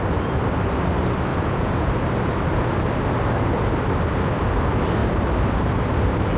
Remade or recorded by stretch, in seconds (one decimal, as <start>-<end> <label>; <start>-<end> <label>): 0.0-1.3 recorded; 1.3-1.9 remade; 1.9-6.4 recorded